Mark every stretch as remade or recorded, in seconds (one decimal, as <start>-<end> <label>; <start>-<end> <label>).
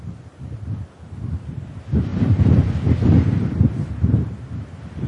0.0-2.1 recorded; 2.1-2.8 remade; 2.8-5.1 recorded